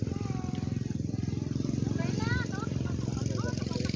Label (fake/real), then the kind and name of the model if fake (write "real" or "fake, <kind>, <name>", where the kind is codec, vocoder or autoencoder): real